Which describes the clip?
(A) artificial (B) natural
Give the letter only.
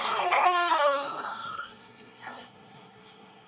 A